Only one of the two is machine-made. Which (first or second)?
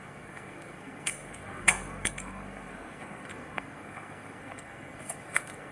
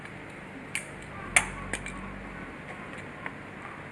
first